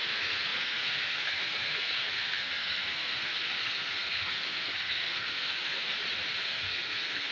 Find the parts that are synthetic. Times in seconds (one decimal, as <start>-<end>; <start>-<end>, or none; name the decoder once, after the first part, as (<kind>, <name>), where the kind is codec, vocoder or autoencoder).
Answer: 0.0-5.9 (codec, SNAC); 6.4-7.3